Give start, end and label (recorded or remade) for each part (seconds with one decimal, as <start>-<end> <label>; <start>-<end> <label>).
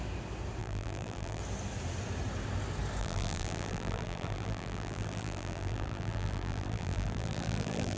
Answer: 0.0-0.6 recorded; 0.6-1.4 remade; 1.4-3.0 recorded; 3.0-8.0 remade